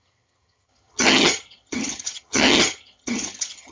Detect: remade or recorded remade